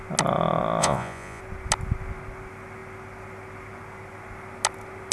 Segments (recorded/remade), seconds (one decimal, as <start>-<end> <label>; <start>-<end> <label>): 0.0-0.8 recorded; 0.8-1.4 remade; 1.4-5.1 recorded